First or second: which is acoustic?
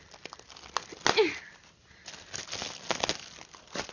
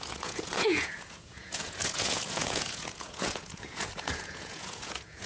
first